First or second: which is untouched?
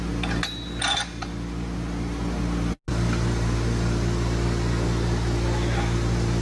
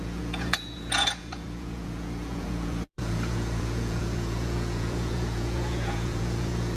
first